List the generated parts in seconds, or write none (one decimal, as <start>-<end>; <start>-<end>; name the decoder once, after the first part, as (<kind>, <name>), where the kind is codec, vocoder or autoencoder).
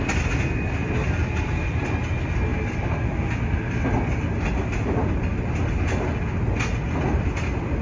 none